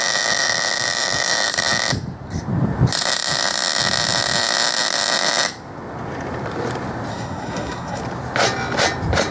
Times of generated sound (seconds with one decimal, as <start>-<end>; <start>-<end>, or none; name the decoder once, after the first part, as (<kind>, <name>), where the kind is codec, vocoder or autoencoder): 7.1-8.0 (codec, SNAC)